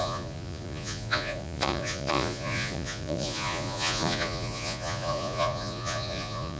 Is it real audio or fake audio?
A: fake